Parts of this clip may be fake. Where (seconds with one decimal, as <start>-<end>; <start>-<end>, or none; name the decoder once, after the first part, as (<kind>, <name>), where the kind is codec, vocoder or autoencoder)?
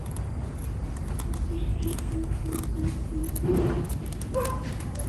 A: 1.7-2.6 (codec, SNAC)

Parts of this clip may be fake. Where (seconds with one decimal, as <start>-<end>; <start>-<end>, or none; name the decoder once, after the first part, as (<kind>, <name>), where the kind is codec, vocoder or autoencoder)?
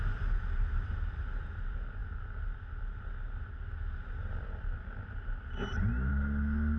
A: none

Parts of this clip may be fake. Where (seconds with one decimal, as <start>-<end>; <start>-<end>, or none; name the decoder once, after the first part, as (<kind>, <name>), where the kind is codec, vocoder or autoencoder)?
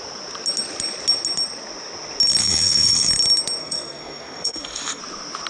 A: 2.4-3.1 (codec, SNAC); 3.6-5.0